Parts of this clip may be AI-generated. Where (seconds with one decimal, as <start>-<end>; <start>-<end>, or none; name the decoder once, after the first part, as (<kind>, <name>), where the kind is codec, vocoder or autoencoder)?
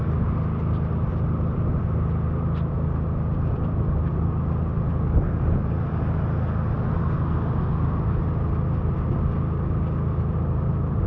1.1-1.8 (vocoder, BigVGAN v2)